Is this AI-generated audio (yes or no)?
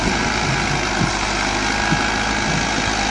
no